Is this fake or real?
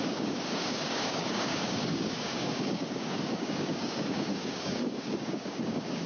fake